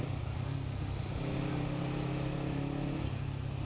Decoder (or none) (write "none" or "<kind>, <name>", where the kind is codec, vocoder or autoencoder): none